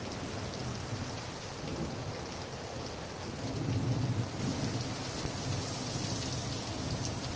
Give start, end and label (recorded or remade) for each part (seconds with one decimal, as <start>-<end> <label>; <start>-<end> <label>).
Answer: 0.0-7.4 recorded